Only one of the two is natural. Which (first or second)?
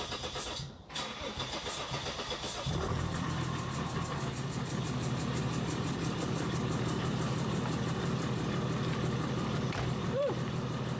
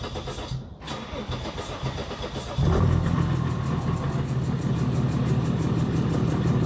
second